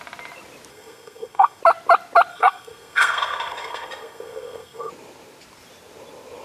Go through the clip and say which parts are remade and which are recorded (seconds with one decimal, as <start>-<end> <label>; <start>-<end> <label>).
0.0-0.7 recorded; 0.7-1.6 remade; 1.6-2.3 recorded; 2.3-4.9 remade; 4.9-6.4 recorded